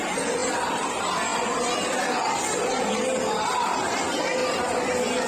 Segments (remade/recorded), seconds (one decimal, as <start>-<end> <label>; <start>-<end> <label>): 0.0-5.3 recorded

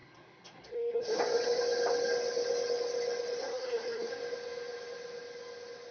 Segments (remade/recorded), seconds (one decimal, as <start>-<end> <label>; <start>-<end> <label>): 0.0-1.2 remade; 1.2-3.4 recorded; 3.4-4.1 remade; 4.1-5.9 recorded

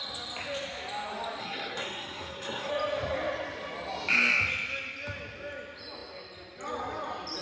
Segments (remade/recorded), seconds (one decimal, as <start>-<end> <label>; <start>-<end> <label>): 0.0-1.4 recorded; 1.4-2.7 remade; 2.7-7.4 recorded

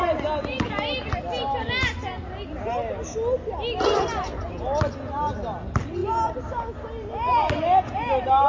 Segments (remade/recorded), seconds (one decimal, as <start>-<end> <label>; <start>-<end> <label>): 0.0-8.5 recorded

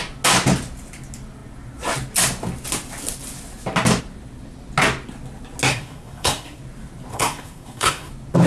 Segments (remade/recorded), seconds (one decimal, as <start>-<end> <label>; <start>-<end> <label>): 0.0-5.7 recorded; 5.7-6.6 remade; 6.6-7.1 recorded; 7.1-8.1 remade; 8.1-8.5 recorded